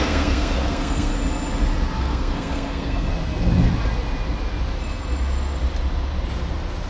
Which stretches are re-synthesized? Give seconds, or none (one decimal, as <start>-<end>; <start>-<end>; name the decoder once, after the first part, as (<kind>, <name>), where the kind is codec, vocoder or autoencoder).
0.0-1.1 (codec, SNAC); 2.0-3.1